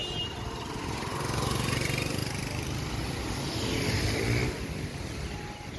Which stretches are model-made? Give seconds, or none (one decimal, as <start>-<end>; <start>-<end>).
0.0-0.7; 2.2-3.0